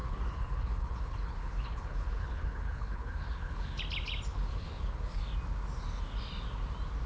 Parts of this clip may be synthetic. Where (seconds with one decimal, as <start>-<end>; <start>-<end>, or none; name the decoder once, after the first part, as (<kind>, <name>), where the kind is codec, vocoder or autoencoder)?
0.0-3.8 (codec, HILCodec); 4.3-5.2

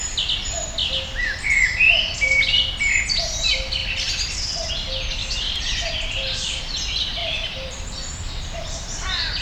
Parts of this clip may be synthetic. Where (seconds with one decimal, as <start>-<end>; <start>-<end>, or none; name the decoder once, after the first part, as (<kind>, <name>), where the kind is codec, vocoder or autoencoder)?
0.8-2.1 (vocoder, BigVGAN v2); 5.2-6.6; 7.2-8.1

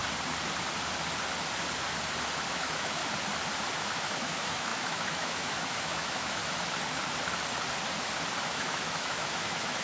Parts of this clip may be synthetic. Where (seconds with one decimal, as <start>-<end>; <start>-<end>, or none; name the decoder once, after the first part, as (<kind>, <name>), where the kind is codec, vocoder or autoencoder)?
2.5-3.0 (autoencoder, DAC-VAE); 3.8-6.4; 8.4-9.8

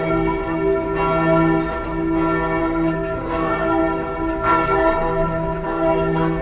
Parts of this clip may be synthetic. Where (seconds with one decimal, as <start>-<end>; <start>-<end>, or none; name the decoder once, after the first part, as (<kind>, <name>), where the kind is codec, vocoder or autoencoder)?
0.0-0.4 (codec, SNAC); 2.6-3.8; 4.3-6.4

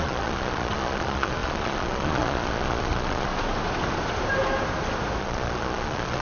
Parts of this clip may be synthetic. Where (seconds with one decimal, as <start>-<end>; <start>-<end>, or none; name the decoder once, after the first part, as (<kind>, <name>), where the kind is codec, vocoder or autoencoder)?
0.0-3.3 (vocoder, Vocos); 5.2-6.2

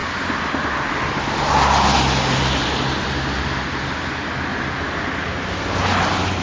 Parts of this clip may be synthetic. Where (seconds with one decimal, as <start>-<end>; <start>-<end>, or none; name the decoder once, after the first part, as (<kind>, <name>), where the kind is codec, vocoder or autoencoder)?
none